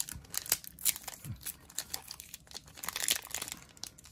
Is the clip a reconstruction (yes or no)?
no